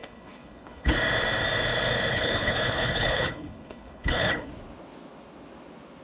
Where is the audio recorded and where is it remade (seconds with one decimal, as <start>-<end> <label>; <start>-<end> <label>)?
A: 0.0-0.9 remade; 0.9-2.1 recorded; 2.1-4.5 remade; 4.5-6.0 recorded